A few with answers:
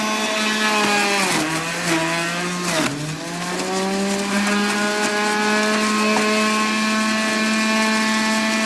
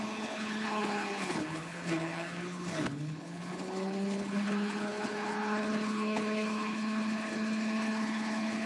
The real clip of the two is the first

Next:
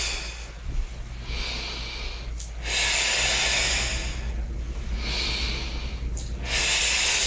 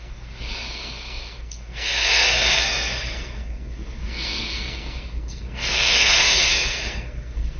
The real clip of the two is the first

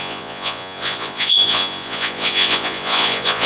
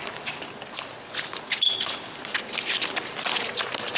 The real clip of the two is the second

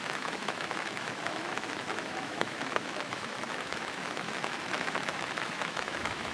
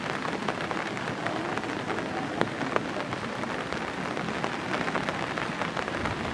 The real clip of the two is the second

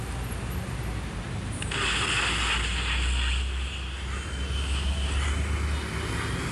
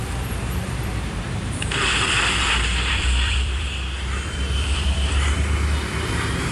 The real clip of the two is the first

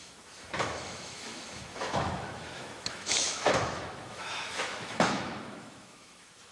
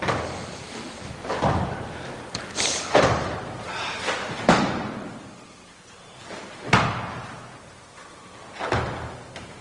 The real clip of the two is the second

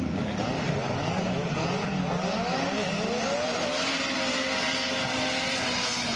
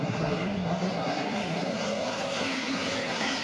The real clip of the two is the first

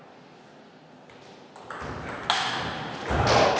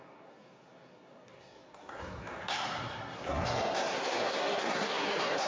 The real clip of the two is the first